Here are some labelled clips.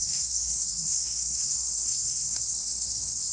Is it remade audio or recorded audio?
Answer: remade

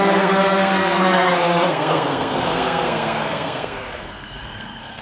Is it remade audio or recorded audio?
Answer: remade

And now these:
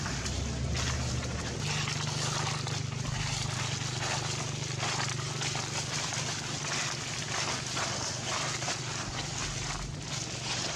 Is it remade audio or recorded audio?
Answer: recorded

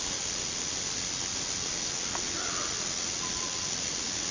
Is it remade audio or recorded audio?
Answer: recorded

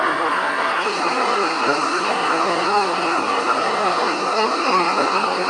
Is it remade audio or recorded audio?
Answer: remade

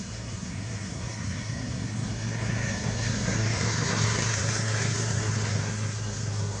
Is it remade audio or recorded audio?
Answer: remade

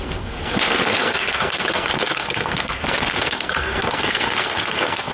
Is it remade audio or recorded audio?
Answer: remade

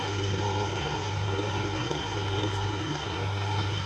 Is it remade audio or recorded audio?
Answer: remade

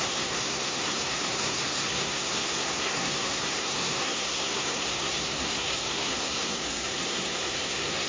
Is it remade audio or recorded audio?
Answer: remade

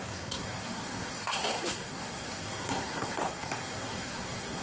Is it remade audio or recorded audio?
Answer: remade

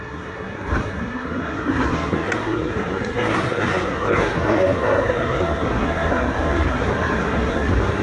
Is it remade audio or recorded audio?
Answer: remade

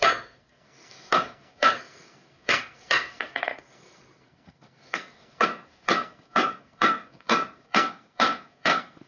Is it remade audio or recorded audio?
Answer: remade